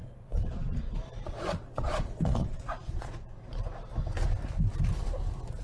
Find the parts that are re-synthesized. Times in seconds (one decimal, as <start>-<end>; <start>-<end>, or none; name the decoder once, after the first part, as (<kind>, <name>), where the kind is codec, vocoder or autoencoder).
0.0-3.4 (vocoder, Vocos)